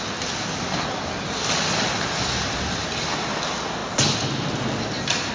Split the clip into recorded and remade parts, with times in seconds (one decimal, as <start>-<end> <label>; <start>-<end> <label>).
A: 0.0-5.3 recorded